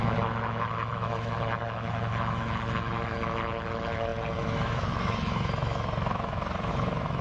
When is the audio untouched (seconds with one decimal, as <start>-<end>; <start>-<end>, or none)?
none